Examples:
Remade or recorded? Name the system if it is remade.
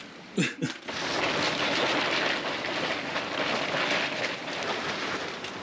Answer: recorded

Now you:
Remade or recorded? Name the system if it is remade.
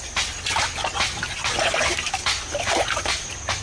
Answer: recorded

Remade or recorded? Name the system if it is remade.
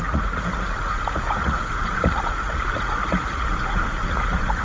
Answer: remade, vocoder, Vocos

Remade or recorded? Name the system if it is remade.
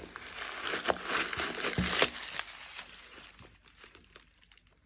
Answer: recorded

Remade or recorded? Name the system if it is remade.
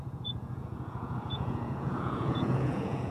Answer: remade, vocoder, Vocos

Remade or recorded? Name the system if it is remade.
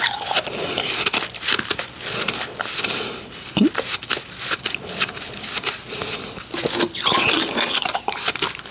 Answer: recorded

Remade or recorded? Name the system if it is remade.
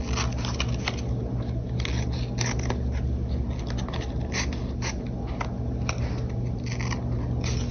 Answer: recorded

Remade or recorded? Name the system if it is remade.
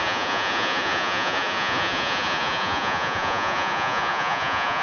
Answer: remade, vocoder, Vocos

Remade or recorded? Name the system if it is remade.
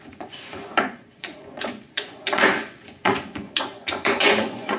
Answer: remade, vocoder, Vocos